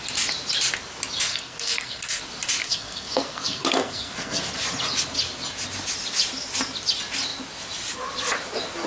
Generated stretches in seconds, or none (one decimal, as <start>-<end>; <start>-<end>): 1.3-2.2; 2.6-4.4